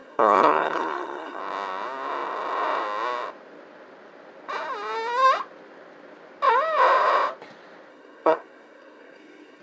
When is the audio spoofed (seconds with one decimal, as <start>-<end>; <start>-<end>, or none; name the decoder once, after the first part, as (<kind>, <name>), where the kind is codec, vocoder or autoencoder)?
0.0-1.4 (codec, SNAC); 7.9-9.6